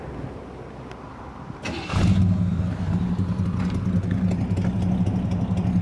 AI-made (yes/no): no